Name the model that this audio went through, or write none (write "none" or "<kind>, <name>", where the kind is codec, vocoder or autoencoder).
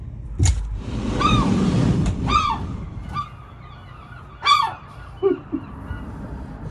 vocoder, BigVGAN v2